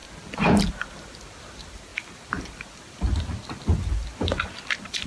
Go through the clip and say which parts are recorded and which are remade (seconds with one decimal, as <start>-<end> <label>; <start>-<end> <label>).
0.0-5.1 remade